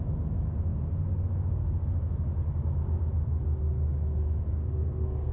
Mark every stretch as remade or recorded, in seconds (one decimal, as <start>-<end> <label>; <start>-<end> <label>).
0.0-4.6 recorded; 4.6-5.3 remade